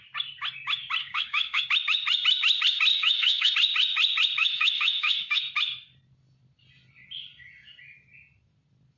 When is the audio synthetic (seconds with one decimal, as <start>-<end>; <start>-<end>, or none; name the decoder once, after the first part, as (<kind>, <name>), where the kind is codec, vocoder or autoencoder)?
1.0-1.6 (autoencoder, DAC-VAE); 2.9-3.5; 4.4-5.4